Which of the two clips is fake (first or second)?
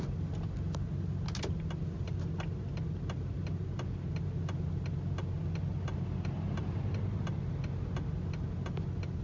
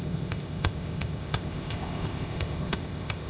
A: second